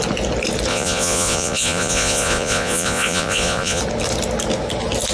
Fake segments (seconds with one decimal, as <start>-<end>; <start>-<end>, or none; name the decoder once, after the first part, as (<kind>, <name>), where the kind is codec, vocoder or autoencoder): 0.7-3.8 (vocoder, Vocos)